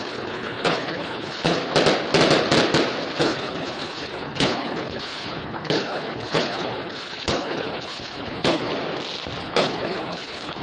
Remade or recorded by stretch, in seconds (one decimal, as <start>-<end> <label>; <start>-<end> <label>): 0.0-1.6 remade; 1.6-3.2 recorded; 3.2-8.7 remade; 8.7-9.4 recorded; 9.4-10.6 remade